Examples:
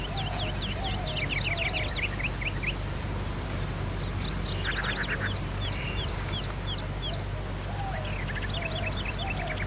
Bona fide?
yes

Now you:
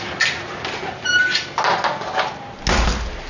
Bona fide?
yes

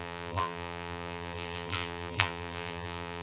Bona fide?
no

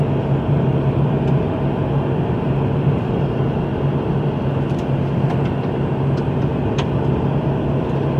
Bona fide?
yes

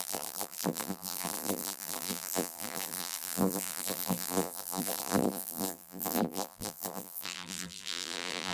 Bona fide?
no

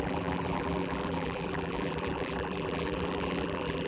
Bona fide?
no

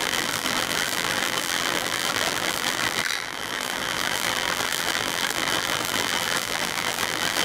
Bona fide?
no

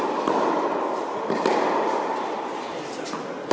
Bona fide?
yes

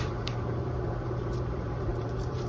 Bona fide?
no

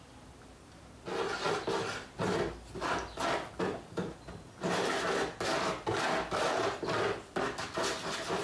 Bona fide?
yes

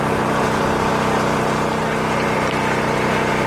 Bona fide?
yes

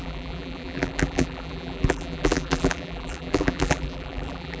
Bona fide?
no